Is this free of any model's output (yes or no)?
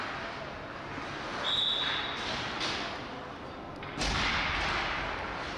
yes